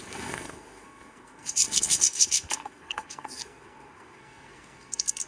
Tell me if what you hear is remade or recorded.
remade